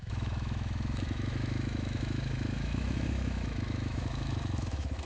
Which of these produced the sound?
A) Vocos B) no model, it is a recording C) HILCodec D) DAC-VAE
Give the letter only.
D